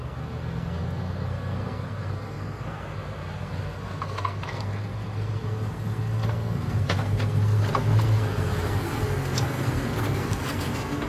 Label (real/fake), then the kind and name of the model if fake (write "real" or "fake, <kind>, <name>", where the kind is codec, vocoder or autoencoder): fake, codec, SNAC